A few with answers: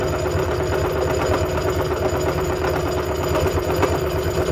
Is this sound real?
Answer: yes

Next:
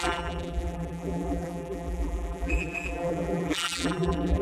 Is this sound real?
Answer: no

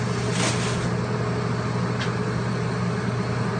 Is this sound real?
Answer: yes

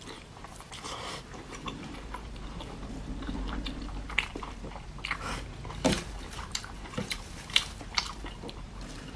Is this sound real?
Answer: no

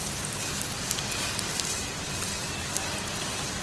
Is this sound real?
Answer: yes